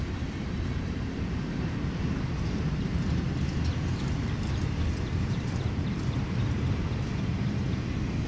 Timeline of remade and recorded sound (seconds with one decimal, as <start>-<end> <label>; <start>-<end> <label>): 0.0-2.9 remade; 2.9-4.5 recorded; 4.5-8.3 remade